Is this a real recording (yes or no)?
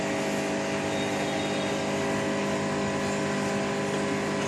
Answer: yes